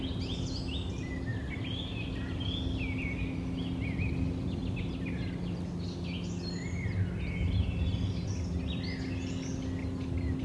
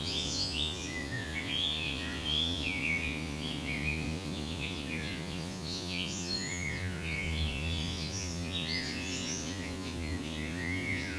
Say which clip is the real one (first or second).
first